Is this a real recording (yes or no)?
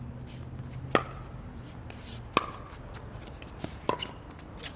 yes